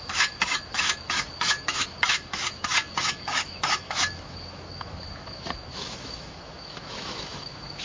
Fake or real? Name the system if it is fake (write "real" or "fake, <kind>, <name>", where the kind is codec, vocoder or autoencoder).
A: fake, autoencoder, DAC-VAE